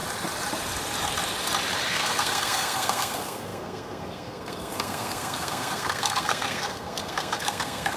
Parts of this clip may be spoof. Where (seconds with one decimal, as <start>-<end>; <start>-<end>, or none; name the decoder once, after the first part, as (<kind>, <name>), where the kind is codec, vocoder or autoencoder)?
1.9-8.0 (codec, SNAC)